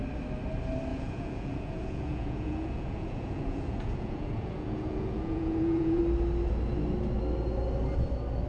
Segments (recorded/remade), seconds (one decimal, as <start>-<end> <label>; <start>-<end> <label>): 0.0-0.9 recorded; 0.9-6.0 remade; 6.0-8.5 recorded